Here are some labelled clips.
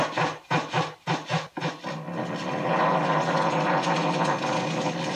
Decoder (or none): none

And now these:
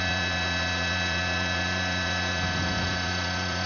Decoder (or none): none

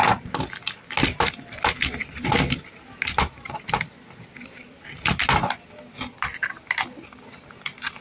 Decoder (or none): none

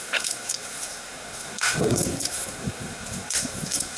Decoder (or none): codec, SNAC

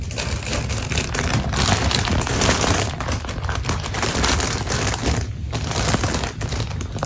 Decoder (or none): none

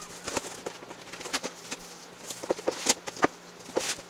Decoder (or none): none